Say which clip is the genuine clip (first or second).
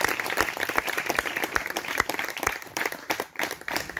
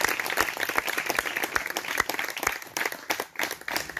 second